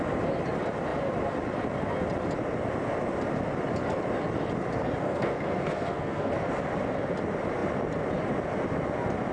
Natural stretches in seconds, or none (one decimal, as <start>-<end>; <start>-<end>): 0.0-5.0; 6.3-9.3